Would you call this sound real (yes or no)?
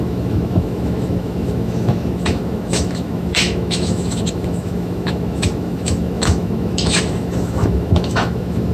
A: no